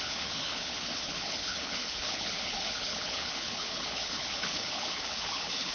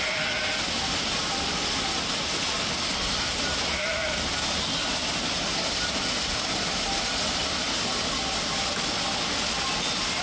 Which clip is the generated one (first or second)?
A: first